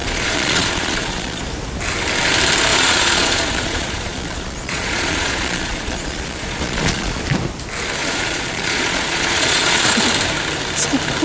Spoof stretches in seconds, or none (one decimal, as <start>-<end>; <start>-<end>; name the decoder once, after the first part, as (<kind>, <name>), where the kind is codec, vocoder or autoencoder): 0.0-1.4 (vocoder, Vocos); 2.7-7.2; 8.0-9.9